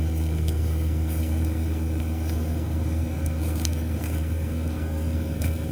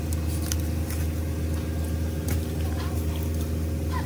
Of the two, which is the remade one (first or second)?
first